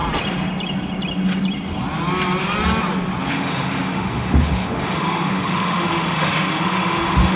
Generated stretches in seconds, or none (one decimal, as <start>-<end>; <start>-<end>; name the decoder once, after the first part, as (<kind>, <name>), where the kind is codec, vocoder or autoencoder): 3.3-7.4 (autoencoder, DAC-VAE)